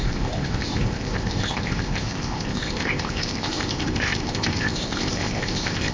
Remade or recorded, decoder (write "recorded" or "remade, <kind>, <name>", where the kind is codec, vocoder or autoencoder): remade, codec, ZipCodec